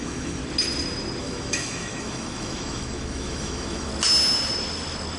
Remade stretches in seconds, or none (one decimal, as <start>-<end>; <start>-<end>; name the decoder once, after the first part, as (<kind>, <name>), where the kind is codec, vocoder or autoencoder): 0.0-0.4 (autoencoder, DAC-VAE); 1.2-3.9

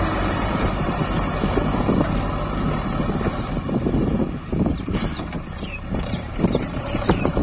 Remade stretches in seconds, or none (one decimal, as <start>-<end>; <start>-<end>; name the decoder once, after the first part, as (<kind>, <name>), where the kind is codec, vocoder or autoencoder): 0.0-1.0 (vocoder, BigVGAN v2); 3.3-4.2; 4.9-7.4

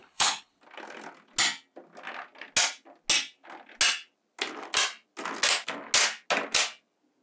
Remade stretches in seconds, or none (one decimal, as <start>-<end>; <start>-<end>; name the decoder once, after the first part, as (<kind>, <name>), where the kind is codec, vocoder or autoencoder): 0.0-0.6 (codec, HILCodec)

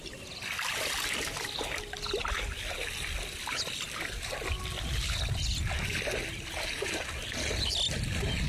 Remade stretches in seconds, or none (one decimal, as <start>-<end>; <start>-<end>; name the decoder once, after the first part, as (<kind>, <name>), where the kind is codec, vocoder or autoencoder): none